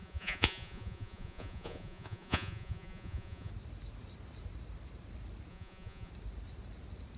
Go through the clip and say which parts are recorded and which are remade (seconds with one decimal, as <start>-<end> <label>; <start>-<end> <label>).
0.0-3.5 remade; 3.5-5.5 recorded; 5.5-6.1 remade; 6.1-7.2 recorded